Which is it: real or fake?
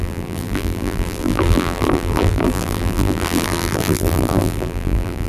fake